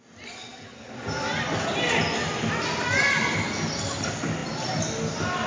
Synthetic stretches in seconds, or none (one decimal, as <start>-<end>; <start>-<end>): none